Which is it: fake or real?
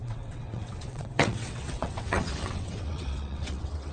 fake